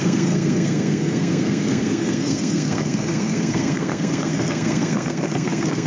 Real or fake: fake